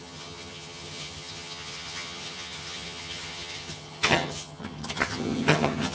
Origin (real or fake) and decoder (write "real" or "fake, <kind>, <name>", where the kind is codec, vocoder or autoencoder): fake, vocoder, HiFi-GAN